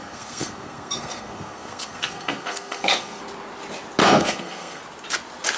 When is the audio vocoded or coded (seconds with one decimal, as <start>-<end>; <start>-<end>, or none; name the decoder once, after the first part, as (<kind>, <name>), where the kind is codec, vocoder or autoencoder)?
0.0-3.2 (codec, SNAC); 4.0-4.8